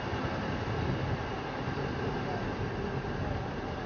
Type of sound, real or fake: real